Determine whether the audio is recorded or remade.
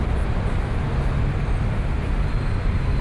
recorded